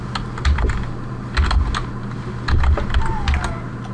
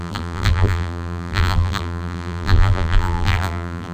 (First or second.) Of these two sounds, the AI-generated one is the second